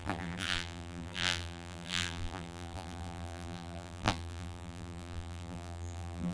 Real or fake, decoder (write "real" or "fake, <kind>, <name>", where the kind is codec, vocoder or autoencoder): fake, vocoder, BigVGAN v2